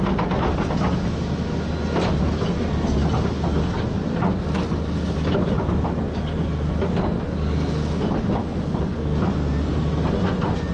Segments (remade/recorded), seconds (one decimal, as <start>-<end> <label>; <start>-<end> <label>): 0.0-10.7 recorded